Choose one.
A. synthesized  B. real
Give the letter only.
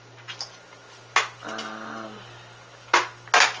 B